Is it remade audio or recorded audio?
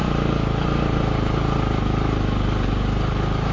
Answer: recorded